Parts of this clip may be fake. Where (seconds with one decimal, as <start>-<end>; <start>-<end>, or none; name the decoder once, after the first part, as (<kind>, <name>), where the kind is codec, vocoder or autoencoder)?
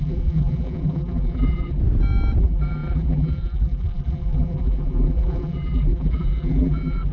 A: 0.0-1.8 (vocoder, BigVGAN v2); 2.4-7.1